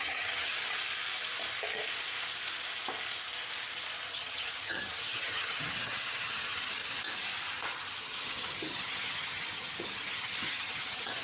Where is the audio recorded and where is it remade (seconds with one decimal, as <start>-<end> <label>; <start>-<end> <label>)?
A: 0.0-0.5 remade; 0.5-4.1 recorded; 4.1-6.8 remade; 6.8-7.7 recorded; 7.7-11.2 remade